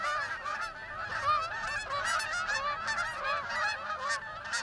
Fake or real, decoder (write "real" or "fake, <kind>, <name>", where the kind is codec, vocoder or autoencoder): real